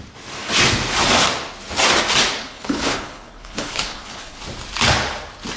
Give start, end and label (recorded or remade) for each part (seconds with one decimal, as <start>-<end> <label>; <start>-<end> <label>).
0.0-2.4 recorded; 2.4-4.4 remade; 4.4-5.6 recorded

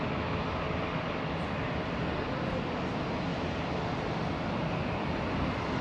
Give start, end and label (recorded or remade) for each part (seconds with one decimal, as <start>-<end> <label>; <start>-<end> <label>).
0.0-5.8 recorded

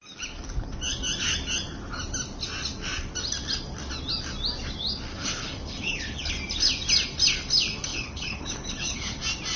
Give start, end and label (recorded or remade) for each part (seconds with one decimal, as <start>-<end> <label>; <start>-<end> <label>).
0.0-5.1 recorded; 5.1-6.3 remade; 6.3-7.9 recorded; 7.9-9.2 remade; 9.2-9.6 recorded

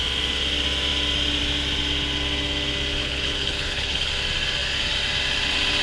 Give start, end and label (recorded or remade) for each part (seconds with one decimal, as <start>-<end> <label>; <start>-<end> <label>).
0.0-3.0 recorded; 3.0-4.1 remade; 4.1-5.8 recorded